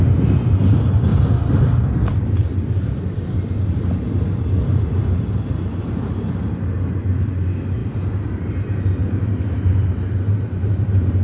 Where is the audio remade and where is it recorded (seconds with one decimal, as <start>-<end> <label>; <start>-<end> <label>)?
0.0-1.1 recorded; 1.1-5.9 remade; 5.9-7.8 recorded; 7.8-9.9 remade; 9.9-11.2 recorded

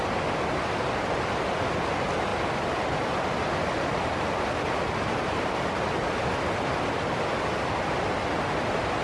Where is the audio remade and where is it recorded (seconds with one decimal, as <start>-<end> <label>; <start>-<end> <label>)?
0.0-9.0 recorded

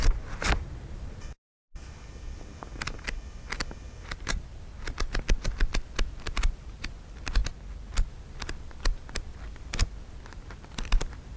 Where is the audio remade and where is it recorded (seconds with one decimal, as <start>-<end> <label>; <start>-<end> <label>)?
0.0-5.7 remade; 5.7-6.4 recorded; 6.4-7.4 remade; 7.4-8.1 recorded; 8.1-11.4 remade

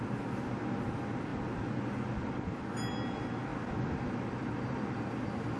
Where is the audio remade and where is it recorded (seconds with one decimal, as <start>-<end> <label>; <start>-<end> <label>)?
0.0-5.6 recorded